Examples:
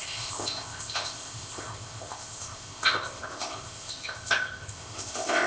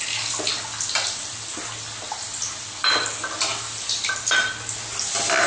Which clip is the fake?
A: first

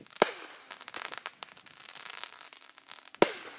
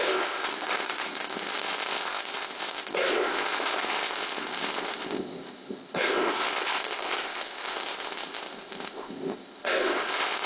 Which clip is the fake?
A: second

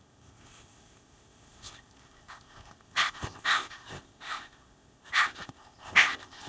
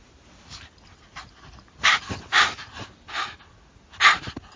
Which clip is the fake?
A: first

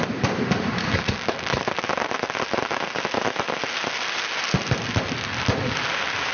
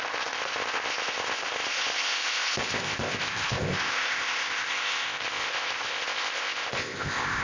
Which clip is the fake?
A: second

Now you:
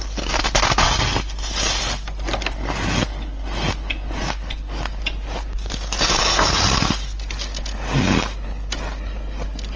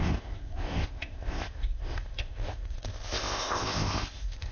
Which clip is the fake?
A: second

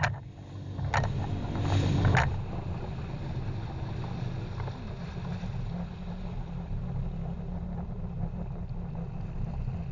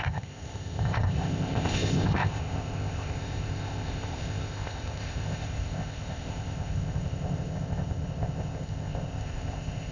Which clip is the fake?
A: second